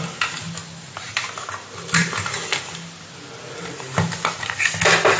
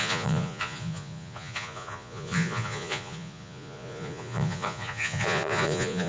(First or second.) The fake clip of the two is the second